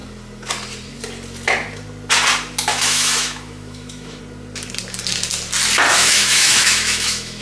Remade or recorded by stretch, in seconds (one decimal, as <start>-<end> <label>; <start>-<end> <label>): 0.0-2.7 recorded; 2.7-4.2 remade; 4.2-5.9 recorded; 5.9-7.4 remade